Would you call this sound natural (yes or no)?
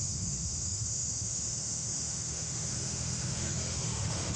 no